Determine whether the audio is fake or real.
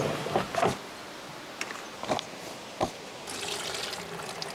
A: real